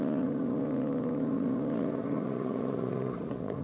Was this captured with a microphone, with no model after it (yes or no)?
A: no